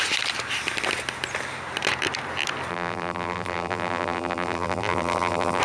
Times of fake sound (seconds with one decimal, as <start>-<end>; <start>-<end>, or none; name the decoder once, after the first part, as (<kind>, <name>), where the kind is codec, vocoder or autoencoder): 2.7-5.6 (vocoder, BigVGAN v2)